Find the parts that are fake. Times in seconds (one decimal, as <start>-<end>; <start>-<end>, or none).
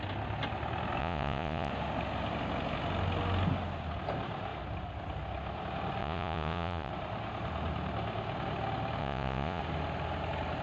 1.0-1.7; 6.0-6.9; 9.0-9.6